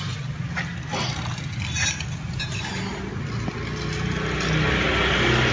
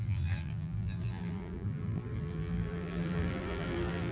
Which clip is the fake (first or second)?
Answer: second